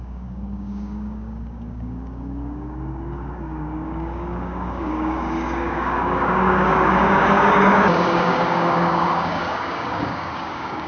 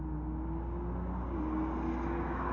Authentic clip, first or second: second